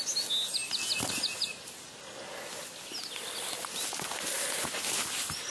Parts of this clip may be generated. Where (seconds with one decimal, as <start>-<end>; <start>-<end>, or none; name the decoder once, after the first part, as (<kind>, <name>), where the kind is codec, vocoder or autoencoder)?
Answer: none